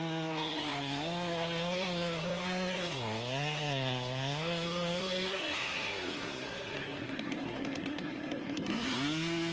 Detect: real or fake fake